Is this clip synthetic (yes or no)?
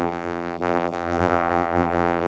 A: yes